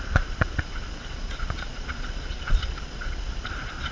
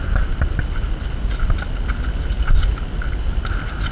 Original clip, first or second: second